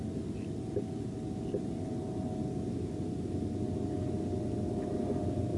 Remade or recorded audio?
recorded